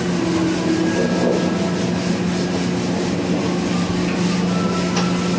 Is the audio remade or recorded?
recorded